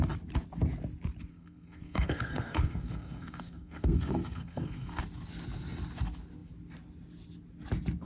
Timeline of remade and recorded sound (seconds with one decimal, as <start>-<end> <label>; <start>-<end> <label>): 0.0-1.3 recorded; 1.3-5.0 remade; 5.0-8.1 recorded